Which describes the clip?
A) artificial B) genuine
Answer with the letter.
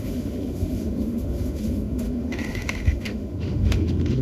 A